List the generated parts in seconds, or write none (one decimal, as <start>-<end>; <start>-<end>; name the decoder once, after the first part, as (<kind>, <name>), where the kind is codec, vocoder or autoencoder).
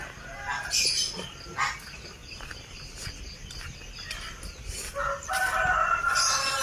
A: none